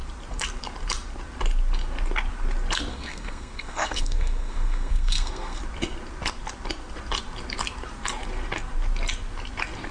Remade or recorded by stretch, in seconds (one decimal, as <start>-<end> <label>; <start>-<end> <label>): 0.0-2.9 recorded; 2.9-5.6 remade; 5.6-9.9 recorded